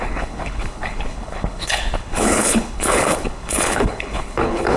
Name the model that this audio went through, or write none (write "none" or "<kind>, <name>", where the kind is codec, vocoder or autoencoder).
codec, HILCodec